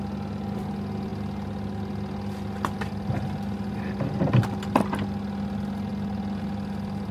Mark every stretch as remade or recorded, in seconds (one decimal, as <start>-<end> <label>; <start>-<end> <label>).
0.0-7.1 recorded